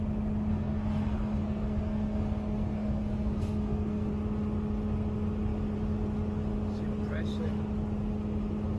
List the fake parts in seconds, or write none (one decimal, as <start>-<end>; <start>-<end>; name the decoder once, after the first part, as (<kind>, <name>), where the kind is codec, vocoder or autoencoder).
0.5-4.1 (codec, SNAC)